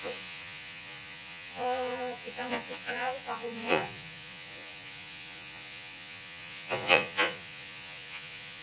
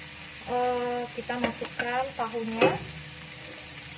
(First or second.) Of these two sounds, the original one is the second